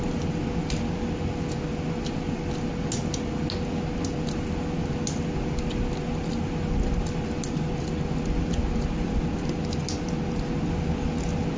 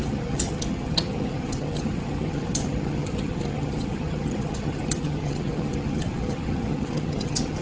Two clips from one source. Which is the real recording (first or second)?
first